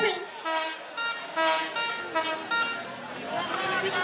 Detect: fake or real real